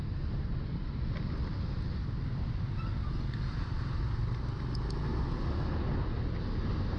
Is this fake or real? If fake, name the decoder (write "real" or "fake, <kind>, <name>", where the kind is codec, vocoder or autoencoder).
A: real